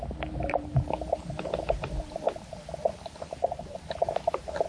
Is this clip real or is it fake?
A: real